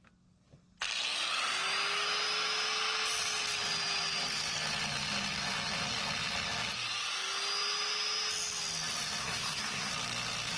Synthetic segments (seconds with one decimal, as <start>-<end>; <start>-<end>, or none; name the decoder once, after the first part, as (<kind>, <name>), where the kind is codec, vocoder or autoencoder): 9.2-9.9 (codec, SNAC)